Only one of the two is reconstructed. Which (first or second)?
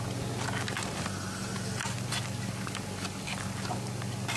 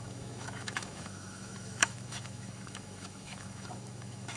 second